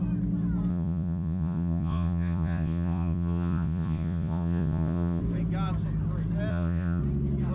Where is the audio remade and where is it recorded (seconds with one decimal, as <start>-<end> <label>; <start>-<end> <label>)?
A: 0.0-0.7 recorded; 0.7-5.2 remade; 5.2-6.5 recorded; 6.5-7.0 remade; 7.0-7.5 recorded